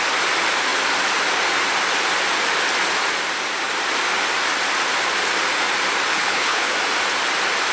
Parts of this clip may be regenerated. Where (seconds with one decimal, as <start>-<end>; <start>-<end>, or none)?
6.1-6.7